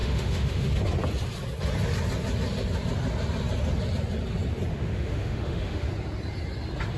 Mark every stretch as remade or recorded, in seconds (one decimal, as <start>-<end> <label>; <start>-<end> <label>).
0.0-0.7 remade; 0.7-4.7 recorded; 4.7-5.9 remade; 5.9-7.0 recorded